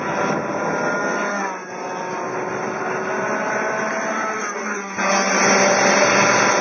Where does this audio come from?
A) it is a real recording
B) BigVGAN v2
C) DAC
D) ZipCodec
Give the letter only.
A